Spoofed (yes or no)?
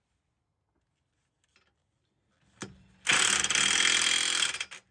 no